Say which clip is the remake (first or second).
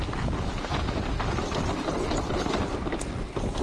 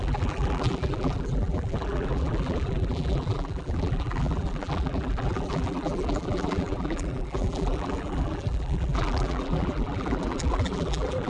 second